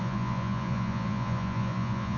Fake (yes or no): yes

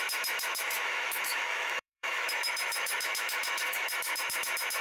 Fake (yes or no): yes